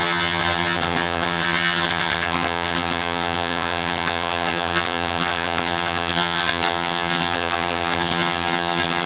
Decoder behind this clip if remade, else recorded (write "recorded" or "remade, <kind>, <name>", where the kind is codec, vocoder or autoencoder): remade, vocoder, HiFi-GAN